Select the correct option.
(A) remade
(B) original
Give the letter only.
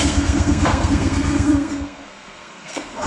A